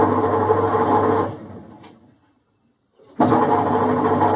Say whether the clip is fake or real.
real